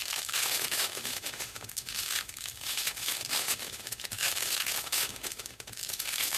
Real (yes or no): no